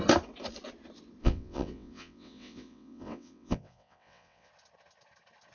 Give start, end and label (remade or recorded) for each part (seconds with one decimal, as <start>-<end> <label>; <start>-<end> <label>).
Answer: 0.0-1.2 recorded; 1.2-4.5 remade; 4.5-5.5 recorded